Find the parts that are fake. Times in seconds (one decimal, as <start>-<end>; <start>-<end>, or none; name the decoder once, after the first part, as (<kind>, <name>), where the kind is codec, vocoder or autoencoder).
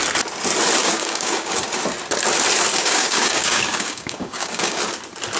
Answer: 0.8-1.6 (codec, DAC); 2.7-4.8